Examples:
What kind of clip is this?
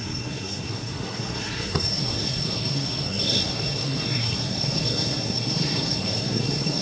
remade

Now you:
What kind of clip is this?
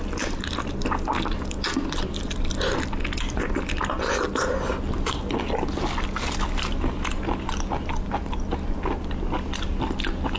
recorded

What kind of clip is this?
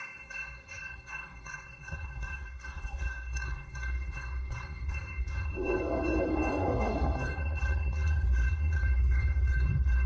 remade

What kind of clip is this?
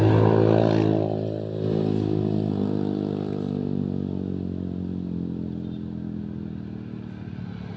recorded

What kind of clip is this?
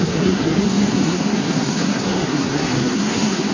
remade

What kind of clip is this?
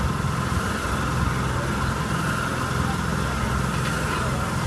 recorded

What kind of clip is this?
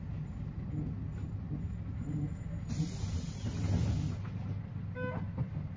recorded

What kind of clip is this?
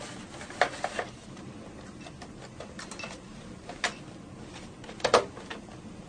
recorded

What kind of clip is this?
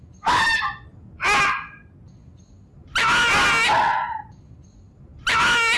recorded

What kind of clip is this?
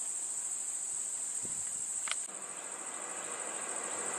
recorded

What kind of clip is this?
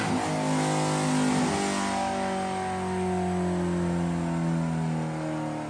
recorded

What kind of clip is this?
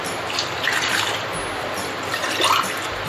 recorded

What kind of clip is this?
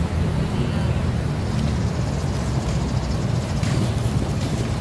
recorded